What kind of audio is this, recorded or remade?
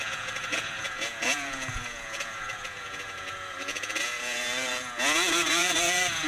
remade